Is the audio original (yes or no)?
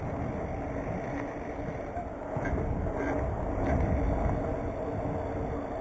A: yes